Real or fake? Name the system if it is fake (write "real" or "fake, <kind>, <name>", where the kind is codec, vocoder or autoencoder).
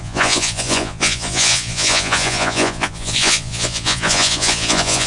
fake, vocoder, Vocos